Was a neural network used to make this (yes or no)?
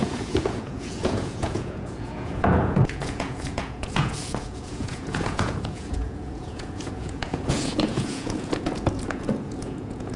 yes